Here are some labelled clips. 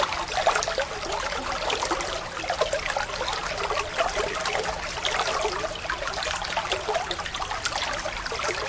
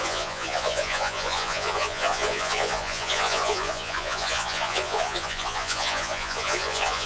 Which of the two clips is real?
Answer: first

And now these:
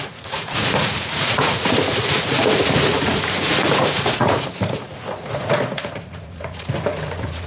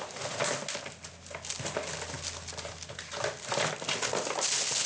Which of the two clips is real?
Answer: second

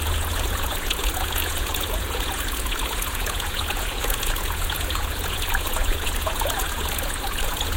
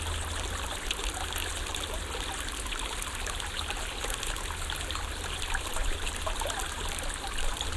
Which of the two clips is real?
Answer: second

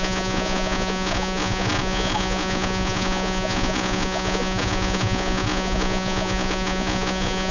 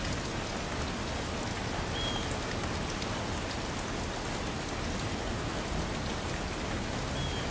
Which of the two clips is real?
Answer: second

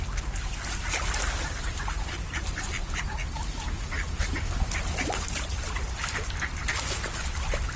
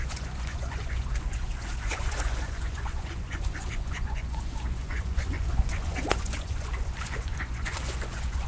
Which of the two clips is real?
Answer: first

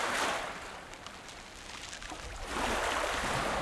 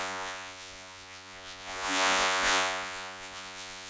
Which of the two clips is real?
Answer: first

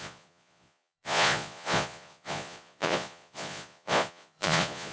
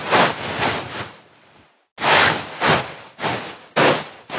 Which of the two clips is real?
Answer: second